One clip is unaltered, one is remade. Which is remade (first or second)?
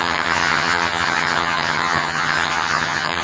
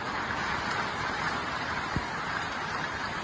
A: first